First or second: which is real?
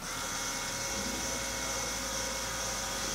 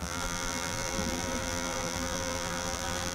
first